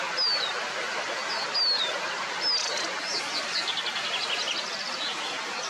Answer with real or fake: real